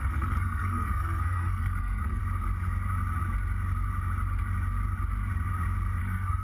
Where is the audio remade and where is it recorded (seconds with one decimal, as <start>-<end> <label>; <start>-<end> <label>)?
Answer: 0.0-2.2 remade; 2.2-6.0 recorded; 6.0-6.4 remade